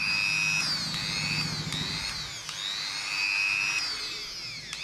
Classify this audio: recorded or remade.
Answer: recorded